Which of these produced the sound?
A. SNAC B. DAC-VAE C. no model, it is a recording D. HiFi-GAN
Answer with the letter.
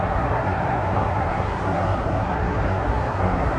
A